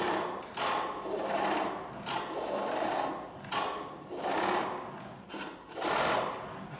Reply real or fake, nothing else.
real